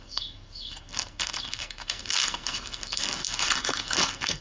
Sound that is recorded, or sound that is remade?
remade